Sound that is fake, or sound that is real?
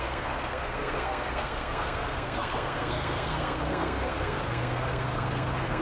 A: fake